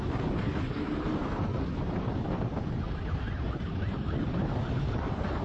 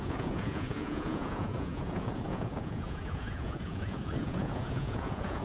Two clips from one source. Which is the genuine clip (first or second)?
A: first